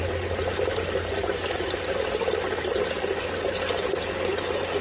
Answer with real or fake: real